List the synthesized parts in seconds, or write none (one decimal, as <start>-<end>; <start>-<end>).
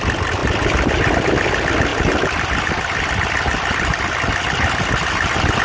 0.4-1.1; 1.9-5.6